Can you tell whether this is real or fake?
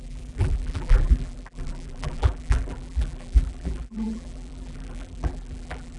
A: fake